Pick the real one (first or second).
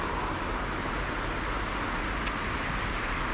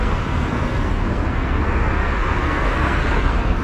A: first